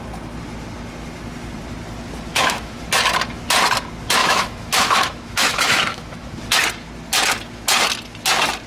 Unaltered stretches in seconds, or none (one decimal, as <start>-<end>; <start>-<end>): 0.0-2.3; 2.8-4.2; 6.4-8.7